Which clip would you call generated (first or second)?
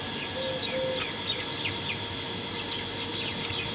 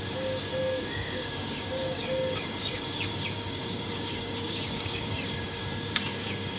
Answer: second